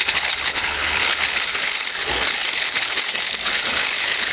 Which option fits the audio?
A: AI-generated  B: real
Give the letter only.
A